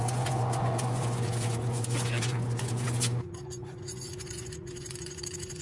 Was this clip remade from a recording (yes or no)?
yes